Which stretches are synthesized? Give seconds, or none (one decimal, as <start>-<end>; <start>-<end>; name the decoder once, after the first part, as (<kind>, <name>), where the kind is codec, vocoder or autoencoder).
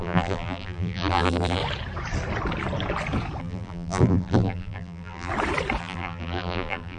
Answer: 0.0-1.6 (vocoder, BigVGAN v2); 3.4-5.3; 5.8-7.0